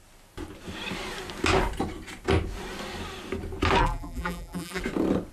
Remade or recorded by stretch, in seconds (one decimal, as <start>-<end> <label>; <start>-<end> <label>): 0.0-3.8 recorded; 3.8-4.8 remade; 4.8-5.3 recorded